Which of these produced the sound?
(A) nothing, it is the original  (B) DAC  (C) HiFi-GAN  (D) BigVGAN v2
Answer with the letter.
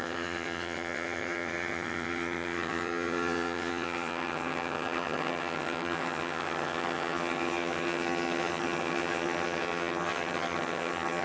C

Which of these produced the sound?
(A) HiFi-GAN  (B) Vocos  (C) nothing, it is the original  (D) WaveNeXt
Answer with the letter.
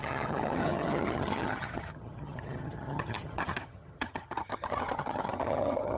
A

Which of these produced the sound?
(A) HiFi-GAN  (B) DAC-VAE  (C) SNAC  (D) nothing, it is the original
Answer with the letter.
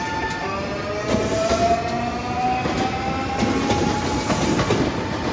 D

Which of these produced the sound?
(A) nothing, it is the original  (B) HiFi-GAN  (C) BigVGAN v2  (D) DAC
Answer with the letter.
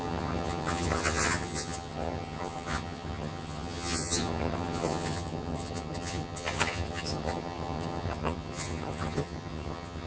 B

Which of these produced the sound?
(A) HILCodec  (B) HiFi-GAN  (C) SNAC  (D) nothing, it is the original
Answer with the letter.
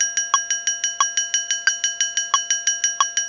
D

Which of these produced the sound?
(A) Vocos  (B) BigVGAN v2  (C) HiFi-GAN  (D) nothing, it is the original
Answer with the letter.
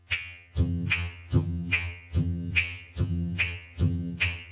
C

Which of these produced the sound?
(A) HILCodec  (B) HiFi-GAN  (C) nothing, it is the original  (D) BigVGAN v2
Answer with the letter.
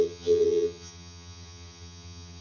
B